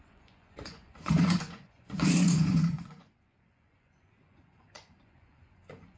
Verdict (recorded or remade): remade